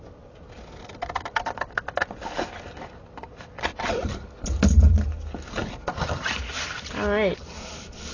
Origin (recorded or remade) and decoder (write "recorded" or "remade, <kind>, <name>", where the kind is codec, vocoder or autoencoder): recorded